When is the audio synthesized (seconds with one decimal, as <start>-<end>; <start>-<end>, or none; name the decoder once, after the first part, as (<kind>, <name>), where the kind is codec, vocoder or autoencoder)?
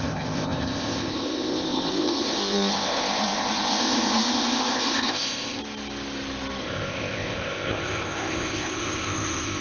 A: 0.0-5.6 (codec, ZipCodec); 6.6-9.6